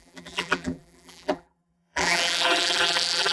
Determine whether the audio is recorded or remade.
remade